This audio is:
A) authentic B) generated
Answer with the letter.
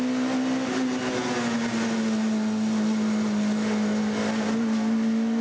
A